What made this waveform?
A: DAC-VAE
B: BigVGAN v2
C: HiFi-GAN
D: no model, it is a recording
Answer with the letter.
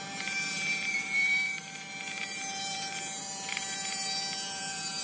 B